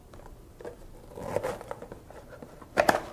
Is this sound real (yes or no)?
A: yes